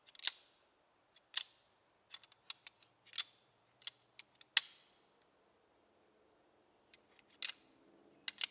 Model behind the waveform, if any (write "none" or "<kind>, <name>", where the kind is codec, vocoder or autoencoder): none